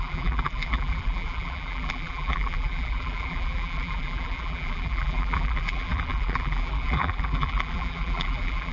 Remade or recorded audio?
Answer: remade